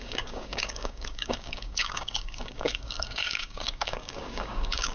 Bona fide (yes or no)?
no